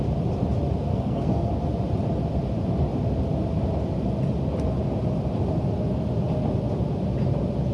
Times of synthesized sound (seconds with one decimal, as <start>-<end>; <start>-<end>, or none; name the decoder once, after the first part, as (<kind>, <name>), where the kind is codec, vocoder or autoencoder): 0.9-1.5 (codec, SNAC)